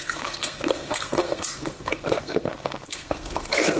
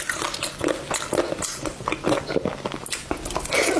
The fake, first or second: first